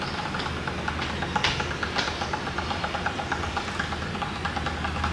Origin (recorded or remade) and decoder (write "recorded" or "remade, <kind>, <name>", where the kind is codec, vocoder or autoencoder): recorded